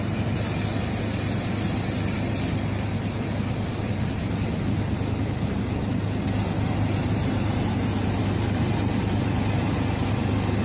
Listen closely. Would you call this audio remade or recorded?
recorded